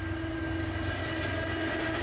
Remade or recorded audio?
recorded